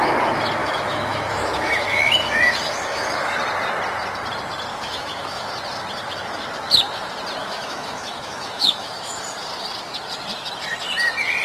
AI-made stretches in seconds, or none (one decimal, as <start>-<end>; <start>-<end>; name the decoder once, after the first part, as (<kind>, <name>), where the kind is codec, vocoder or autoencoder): 0.6-3.3 (autoencoder, DAC-VAE); 4.7-5.5; 7.4-9.2